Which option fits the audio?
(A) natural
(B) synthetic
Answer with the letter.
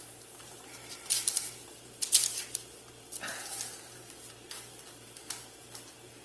B